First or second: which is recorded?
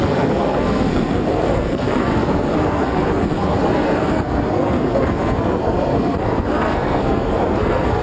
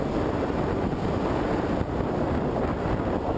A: second